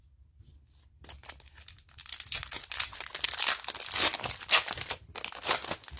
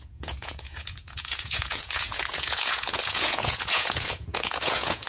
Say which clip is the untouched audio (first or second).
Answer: first